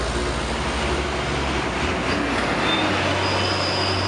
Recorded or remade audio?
recorded